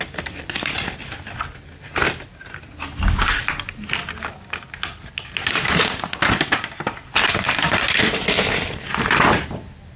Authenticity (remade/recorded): recorded